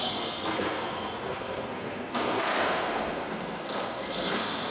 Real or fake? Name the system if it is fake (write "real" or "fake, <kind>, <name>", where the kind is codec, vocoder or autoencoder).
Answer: fake, codec, SNAC